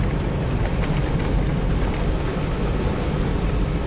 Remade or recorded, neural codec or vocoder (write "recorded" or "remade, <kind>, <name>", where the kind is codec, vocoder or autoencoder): recorded